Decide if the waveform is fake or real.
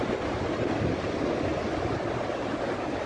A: real